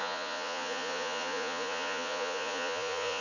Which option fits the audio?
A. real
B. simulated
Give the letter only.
B